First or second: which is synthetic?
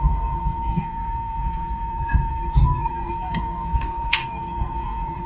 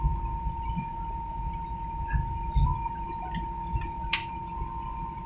first